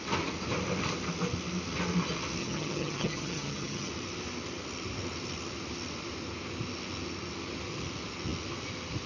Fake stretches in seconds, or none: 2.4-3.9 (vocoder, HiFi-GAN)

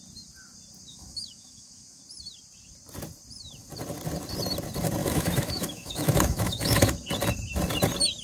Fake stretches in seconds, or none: 0.9-2.0 (autoencoder, DAC-VAE); 5.0-6.9